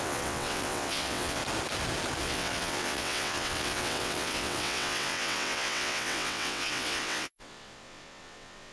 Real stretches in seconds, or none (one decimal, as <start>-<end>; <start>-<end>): 1.4-2.2